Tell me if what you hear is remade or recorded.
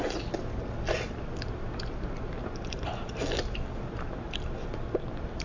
recorded